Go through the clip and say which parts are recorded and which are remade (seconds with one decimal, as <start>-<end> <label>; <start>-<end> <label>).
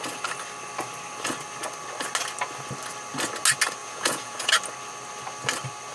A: 0.0-3.8 recorded; 3.8-4.5 remade; 4.5-5.9 recorded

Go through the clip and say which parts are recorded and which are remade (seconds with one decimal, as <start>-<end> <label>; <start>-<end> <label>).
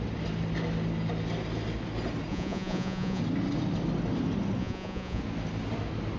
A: 0.0-2.3 recorded; 2.3-3.2 remade; 3.2-4.6 recorded; 4.6-5.2 remade; 5.2-6.2 recorded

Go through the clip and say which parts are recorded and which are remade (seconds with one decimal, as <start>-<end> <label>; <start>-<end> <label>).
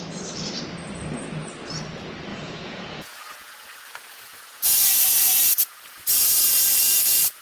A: 0.0-2.3 recorded; 2.3-6.4 remade; 6.4-7.4 recorded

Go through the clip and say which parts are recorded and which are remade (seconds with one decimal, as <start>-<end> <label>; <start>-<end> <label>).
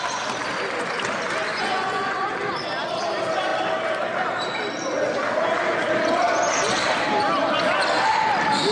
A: 0.0-1.5 recorded; 1.5-2.3 remade; 2.3-8.7 recorded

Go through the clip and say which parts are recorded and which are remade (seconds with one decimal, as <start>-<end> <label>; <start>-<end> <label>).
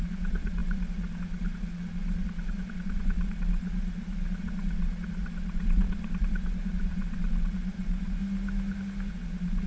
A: 0.0-8.2 remade; 8.2-9.1 recorded; 9.1-9.7 remade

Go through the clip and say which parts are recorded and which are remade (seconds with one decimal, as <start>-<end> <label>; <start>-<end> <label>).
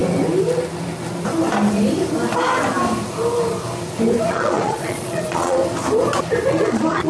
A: 0.0-4.3 recorded; 4.3-5.6 remade; 5.6-6.5 recorded; 6.5-7.1 remade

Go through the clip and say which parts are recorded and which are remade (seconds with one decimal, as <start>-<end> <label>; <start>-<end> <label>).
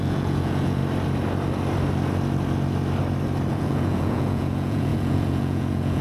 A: 0.0-0.8 remade; 0.8-3.5 recorded; 3.5-6.0 remade